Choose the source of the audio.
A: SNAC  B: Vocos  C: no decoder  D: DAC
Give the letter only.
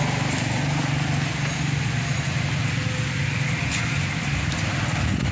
C